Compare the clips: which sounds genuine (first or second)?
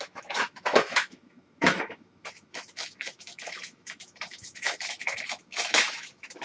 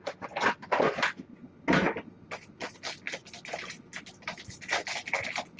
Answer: second